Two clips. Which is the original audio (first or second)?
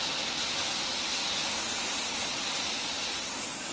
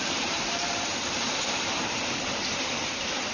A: first